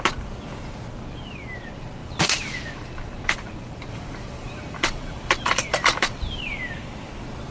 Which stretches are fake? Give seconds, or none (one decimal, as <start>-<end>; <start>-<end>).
2.0-6.4